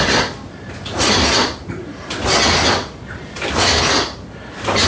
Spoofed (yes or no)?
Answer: no